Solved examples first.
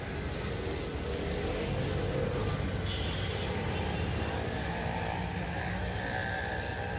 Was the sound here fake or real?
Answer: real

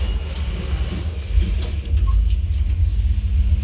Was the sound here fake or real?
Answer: real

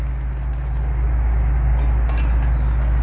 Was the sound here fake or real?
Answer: real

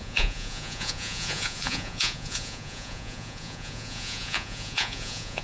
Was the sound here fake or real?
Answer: fake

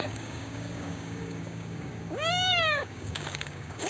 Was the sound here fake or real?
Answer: fake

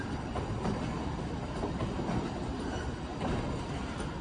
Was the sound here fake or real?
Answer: real